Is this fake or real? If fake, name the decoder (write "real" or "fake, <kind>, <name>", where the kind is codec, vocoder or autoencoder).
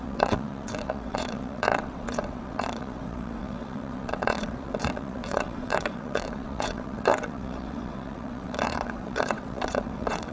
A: fake, vocoder, WaveNeXt